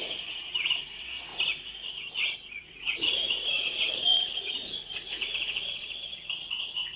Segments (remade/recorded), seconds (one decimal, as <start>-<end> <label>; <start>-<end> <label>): 0.0-1.3 remade; 1.3-2.6 recorded; 2.6-7.0 remade